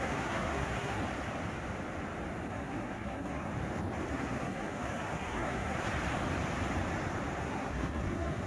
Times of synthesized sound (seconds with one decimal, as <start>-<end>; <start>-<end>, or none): 0.0-1.0; 2.5-3.5; 4.1-5.9; 7.4-8.5